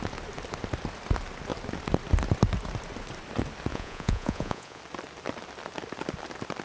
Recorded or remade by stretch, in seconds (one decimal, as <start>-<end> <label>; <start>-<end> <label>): 0.0-3.7 recorded; 3.7-4.8 remade; 4.8-6.6 recorded

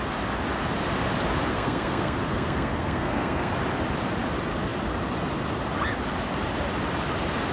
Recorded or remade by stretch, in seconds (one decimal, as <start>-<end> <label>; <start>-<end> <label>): 0.0-1.5 recorded; 1.5-3.5 remade; 3.5-7.5 recorded

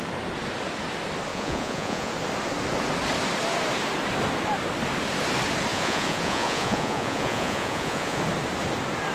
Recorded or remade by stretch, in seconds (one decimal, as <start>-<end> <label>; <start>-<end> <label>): 0.0-1.3 recorded; 1.3-2.1 remade; 2.1-5.7 recorded; 5.7-8.2 remade; 8.2-9.1 recorded

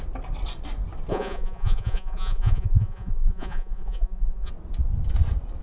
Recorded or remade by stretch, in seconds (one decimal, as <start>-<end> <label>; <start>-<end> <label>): 0.0-1.1 recorded; 1.1-4.5 remade; 4.5-5.6 recorded

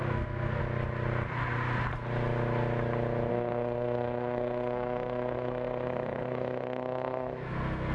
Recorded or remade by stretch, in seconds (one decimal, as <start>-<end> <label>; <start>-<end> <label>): 0.0-0.6 remade; 0.6-3.3 recorded; 3.3-7.9 remade

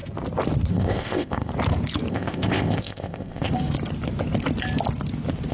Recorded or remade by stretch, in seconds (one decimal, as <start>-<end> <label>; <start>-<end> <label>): 0.0-0.7 recorded; 0.7-1.5 remade; 1.5-2.1 recorded; 2.1-3.5 remade; 3.5-5.5 recorded

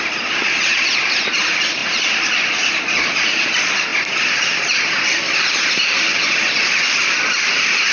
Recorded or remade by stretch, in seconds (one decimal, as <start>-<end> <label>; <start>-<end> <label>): 0.0-3.9 remade; 3.9-5.0 recorded; 5.0-7.9 remade